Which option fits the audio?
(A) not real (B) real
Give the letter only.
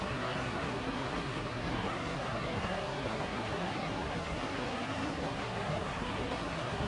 A